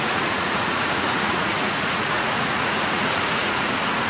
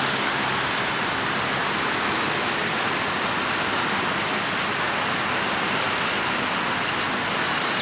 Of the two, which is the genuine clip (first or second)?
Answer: second